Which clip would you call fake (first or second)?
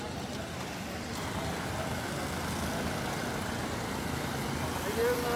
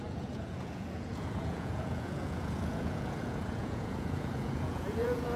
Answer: second